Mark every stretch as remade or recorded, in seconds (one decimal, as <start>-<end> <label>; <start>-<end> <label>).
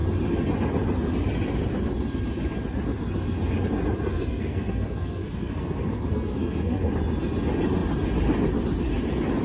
0.0-4.1 recorded; 4.1-6.9 remade; 6.9-9.4 recorded